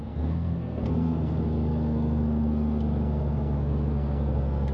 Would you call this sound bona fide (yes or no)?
no